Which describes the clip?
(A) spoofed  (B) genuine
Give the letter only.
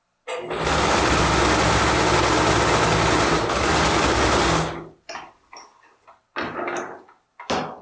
B